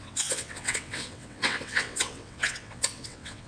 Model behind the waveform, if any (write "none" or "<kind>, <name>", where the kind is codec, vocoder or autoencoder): vocoder, WaveNeXt